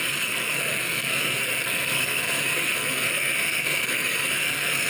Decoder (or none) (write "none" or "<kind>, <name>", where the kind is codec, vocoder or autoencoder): codec, SNAC